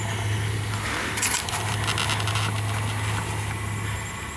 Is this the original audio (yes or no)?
yes